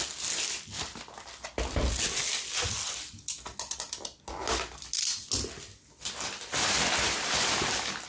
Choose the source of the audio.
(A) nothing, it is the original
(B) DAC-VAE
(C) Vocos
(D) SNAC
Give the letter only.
A